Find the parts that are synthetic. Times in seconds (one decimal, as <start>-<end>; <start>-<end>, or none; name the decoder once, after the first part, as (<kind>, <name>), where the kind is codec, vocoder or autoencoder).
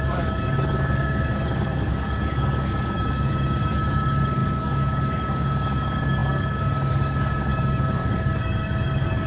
0.0-9.3 (codec, DAC)